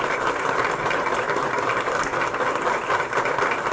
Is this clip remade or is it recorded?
recorded